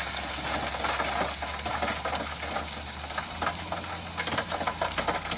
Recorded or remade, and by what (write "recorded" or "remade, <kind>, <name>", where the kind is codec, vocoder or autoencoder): recorded